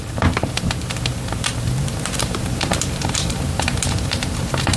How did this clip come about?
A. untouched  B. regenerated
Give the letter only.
B